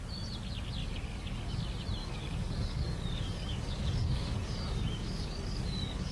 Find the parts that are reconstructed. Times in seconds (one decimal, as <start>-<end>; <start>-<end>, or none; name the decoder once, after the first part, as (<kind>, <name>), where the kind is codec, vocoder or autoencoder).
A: 0.8-1.5 (codec, DAC); 2.0-6.1